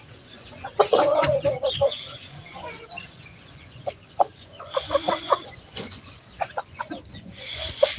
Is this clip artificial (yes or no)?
yes